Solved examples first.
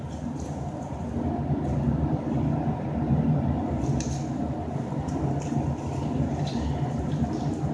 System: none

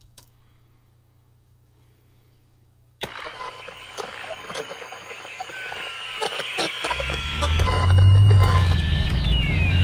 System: codec, DAC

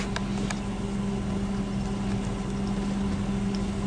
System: none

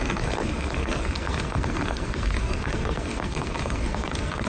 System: codec, SNAC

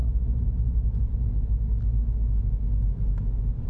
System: none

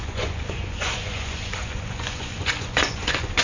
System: vocoder, Vocos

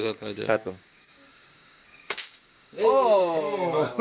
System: codec, DAC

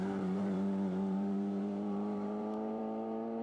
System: vocoder, BigVGAN v2